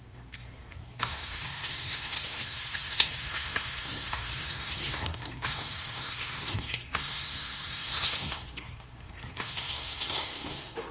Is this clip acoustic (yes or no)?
no